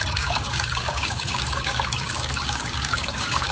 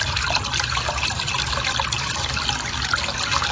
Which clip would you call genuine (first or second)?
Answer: second